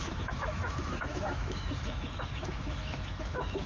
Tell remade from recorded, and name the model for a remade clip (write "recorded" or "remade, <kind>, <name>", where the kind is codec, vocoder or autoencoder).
remade, autoencoder, DAC-VAE